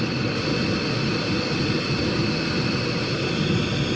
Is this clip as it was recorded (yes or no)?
yes